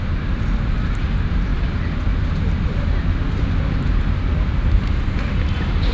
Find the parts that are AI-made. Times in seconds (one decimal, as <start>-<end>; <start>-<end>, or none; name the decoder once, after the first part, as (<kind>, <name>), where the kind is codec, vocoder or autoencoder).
none